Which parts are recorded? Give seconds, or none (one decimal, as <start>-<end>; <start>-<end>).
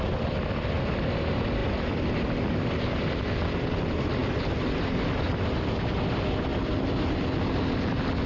0.0-8.3